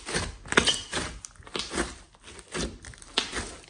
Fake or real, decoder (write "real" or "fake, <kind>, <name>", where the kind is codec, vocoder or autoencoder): real